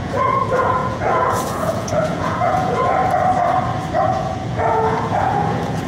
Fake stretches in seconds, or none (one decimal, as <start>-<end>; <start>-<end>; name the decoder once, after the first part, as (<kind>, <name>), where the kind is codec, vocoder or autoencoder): 0.0-3.0 (vocoder, Vocos); 4.0-5.9